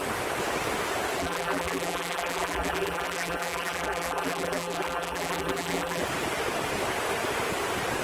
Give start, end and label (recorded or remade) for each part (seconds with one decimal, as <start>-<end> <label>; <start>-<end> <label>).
0.0-1.2 recorded; 1.2-6.0 remade; 6.0-8.0 recorded

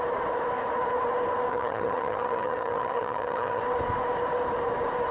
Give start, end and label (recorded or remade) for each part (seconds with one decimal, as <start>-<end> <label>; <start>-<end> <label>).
0.0-1.5 recorded; 1.5-3.6 remade; 3.6-5.1 recorded

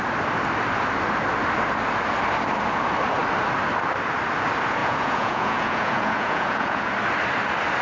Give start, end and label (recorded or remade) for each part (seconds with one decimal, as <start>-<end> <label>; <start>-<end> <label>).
0.0-4.8 recorded; 4.8-6.9 remade; 6.9-7.8 recorded

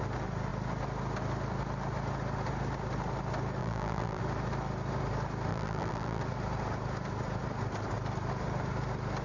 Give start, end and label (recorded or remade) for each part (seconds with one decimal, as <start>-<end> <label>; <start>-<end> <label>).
0.0-3.6 recorded; 3.6-4.2 remade; 4.2-5.5 recorded; 5.5-6.2 remade; 6.2-9.2 recorded